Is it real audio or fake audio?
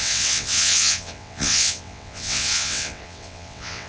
fake